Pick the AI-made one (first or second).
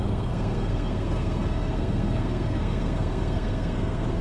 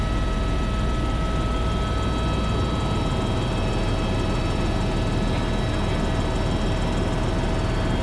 first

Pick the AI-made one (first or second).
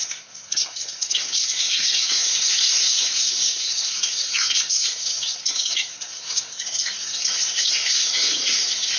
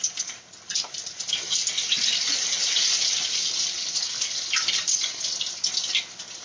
first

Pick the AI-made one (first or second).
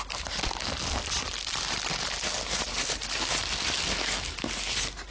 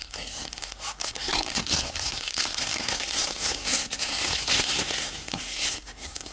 second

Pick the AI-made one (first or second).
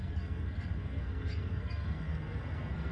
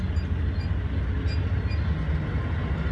first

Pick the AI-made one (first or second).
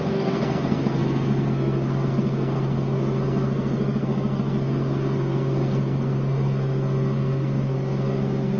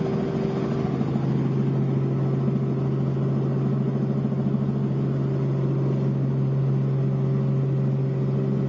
first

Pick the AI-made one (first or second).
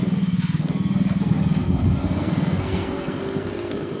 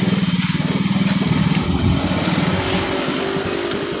first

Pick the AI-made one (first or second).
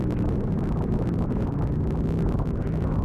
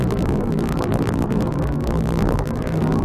second